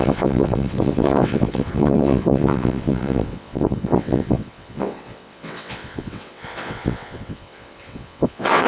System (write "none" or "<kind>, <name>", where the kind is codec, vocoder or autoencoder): vocoder, WaveNeXt